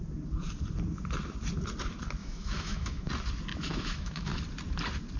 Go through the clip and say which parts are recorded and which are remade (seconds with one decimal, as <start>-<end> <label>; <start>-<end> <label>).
0.0-2.2 recorded; 2.2-3.1 remade; 3.1-3.5 recorded; 3.5-4.3 remade; 4.3-5.2 recorded